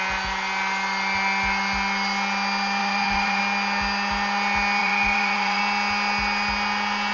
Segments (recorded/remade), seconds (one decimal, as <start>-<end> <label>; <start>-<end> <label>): 0.0-2.8 recorded; 2.8-3.4 remade; 3.4-4.8 recorded; 4.8-5.6 remade; 5.6-7.1 recorded